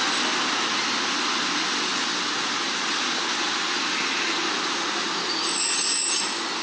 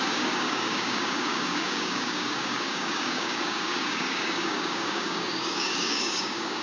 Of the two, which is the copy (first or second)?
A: second